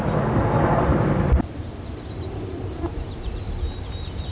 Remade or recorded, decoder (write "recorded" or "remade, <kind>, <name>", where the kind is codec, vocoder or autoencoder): remade, vocoder, BigVGAN v2